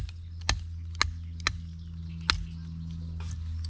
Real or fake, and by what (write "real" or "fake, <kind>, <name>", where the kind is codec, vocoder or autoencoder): real